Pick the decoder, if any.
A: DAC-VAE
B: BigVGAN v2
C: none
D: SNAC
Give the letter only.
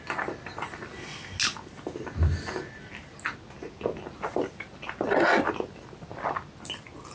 C